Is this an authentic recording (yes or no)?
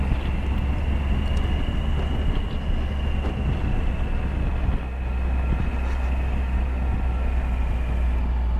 yes